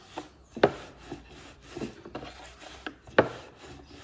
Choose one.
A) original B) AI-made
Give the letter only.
A